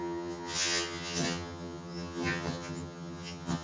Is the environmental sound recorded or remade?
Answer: remade